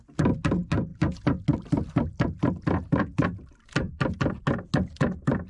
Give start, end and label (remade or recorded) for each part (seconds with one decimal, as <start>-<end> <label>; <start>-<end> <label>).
0.0-5.5 recorded